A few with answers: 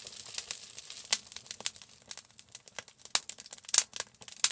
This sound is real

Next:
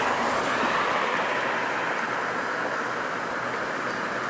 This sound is real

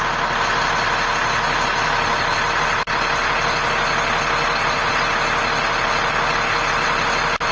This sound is real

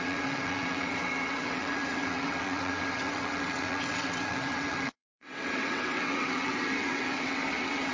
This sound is fake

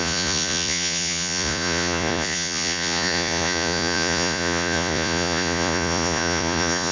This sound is fake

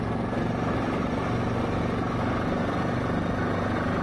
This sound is real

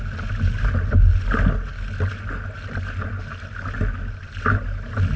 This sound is real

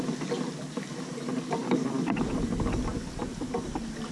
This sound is real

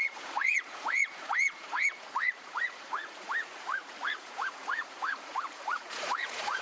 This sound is fake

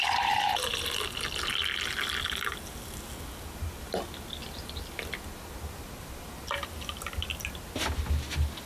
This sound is real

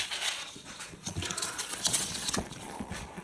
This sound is fake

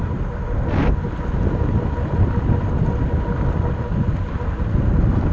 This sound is real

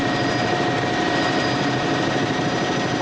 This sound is fake